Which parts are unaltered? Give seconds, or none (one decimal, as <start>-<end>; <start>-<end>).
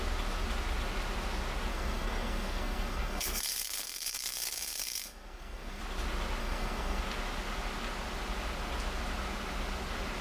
0.0-1.7; 5.8-6.4; 7.0-10.2